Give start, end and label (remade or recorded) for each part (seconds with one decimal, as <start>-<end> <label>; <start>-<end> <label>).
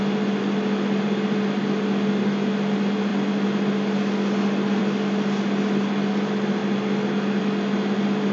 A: 0.0-8.3 recorded